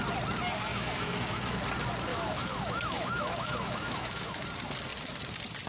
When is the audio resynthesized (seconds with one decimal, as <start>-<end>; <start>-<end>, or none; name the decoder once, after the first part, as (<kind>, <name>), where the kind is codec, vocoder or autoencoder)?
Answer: 0.7-1.6 (autoencoder, DAC-VAE); 2.1-4.4